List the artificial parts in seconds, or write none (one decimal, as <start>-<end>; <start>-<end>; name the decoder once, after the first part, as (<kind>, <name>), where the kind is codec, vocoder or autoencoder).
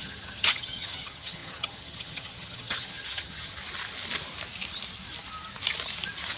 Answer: 0.0-3.6 (vocoder, HiFi-GAN)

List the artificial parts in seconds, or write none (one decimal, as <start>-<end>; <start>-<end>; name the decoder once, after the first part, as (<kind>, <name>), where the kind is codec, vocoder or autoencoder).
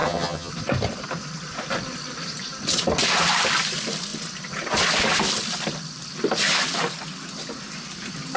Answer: 0.0-0.5 (vocoder, HiFi-GAN)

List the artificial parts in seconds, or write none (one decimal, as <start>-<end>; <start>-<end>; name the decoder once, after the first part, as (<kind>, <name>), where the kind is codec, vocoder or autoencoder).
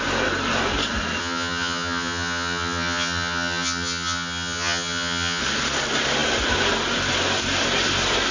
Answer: 1.2-5.4 (vocoder, HiFi-GAN)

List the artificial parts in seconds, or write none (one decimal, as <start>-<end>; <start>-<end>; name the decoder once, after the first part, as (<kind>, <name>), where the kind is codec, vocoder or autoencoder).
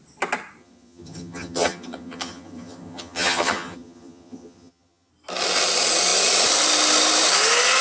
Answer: 0.6-5.1 (vocoder, HiFi-GAN)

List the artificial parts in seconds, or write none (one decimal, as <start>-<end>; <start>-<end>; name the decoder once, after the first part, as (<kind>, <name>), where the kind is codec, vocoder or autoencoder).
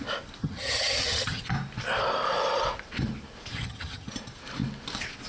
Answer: 0.4-1.4 (vocoder, HiFi-GAN); 3.5-4.1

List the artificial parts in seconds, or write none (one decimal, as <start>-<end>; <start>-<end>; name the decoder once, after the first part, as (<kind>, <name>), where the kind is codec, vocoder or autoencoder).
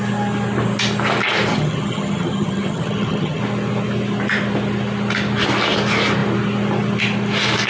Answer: 1.5-3.4 (vocoder, HiFi-GAN)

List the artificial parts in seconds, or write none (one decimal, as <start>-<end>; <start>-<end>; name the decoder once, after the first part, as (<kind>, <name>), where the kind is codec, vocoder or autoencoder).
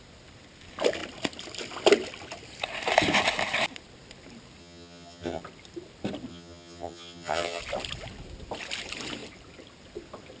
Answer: 4.6-5.4 (vocoder, HiFi-GAN); 6.3-7.6